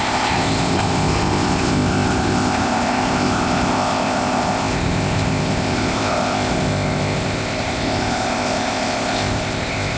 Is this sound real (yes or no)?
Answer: no